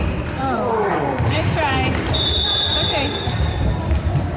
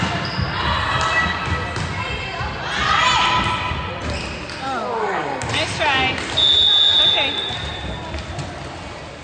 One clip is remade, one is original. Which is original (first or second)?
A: second